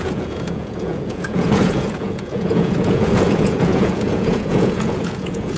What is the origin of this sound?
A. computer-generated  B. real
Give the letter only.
A